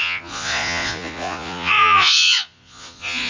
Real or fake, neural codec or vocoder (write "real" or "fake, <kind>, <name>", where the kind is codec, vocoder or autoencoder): fake, vocoder, Vocos